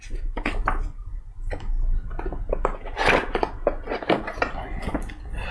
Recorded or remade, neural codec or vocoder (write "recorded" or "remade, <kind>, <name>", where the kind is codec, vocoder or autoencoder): recorded